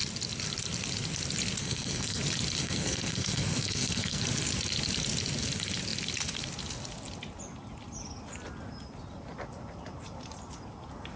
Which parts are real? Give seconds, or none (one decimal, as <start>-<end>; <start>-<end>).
0.0-1.6; 2.2-2.6; 4.2-11.2